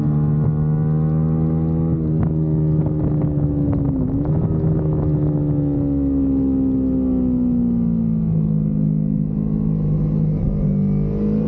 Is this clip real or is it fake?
real